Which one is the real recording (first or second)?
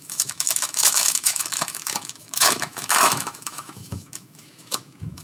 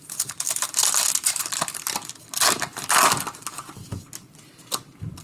second